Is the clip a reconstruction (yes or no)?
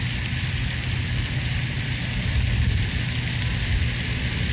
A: no